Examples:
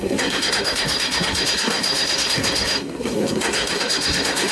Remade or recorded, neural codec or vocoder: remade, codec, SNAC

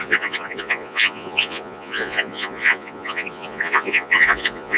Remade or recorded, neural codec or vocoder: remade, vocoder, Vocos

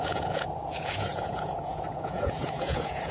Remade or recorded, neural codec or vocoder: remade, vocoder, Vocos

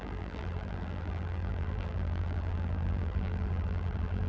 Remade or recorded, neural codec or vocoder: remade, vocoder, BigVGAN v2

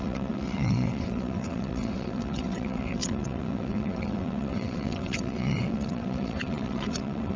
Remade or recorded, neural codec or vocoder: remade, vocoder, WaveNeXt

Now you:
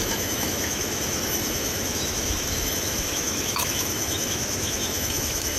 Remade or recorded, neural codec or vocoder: remade, autoencoder, DAC-VAE